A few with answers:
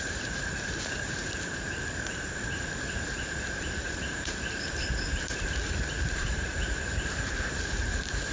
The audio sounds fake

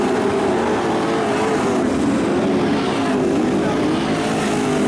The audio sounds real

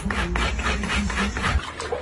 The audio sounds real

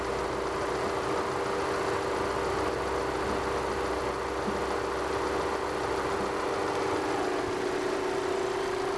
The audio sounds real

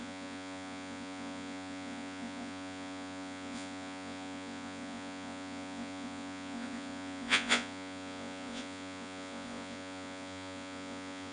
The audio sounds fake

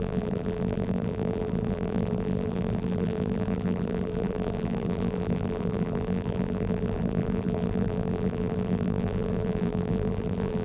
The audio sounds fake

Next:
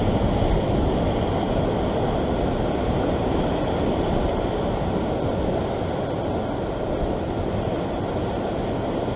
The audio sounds real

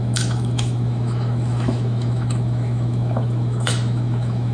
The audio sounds fake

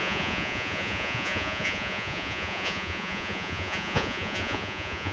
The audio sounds fake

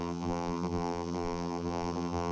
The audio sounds fake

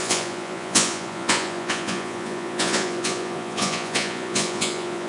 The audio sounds fake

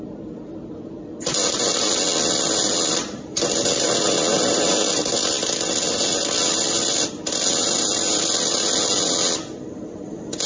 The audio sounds real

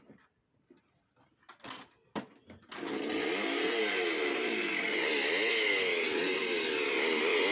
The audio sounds real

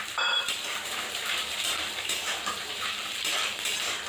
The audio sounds fake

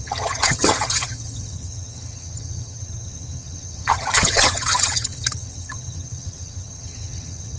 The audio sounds fake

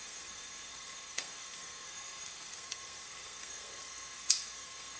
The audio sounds fake